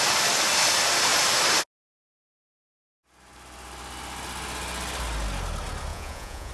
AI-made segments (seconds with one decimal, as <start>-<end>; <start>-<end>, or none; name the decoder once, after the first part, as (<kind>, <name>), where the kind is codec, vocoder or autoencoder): 5.9-6.5 (vocoder, Vocos)